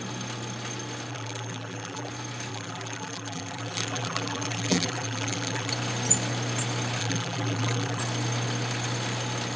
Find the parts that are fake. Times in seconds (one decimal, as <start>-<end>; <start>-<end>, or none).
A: 1.1-2.1; 2.5-5.7; 7.0-8.0